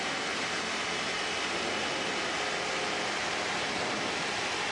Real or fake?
real